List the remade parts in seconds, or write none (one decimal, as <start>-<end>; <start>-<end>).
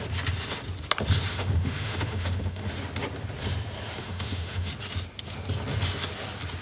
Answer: 1.3-2.7; 4.0-4.7